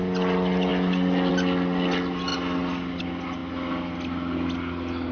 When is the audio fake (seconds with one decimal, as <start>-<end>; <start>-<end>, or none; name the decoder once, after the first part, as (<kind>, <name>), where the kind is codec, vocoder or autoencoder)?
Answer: none